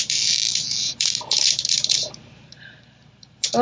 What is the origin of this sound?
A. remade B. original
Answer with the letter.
A